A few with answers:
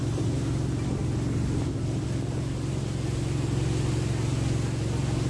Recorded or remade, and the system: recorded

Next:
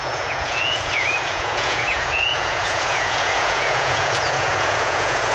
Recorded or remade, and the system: remade, vocoder, Vocos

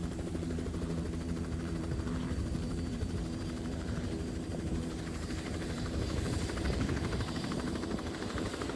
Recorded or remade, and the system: remade, vocoder, BigVGAN v2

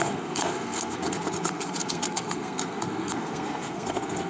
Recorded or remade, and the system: remade, codec, SNAC